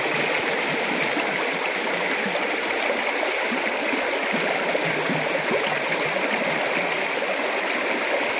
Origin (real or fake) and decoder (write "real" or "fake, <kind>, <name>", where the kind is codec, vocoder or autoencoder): real